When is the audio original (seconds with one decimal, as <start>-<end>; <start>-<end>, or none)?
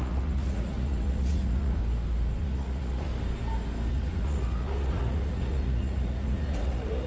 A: 1.8-2.4; 3.1-3.9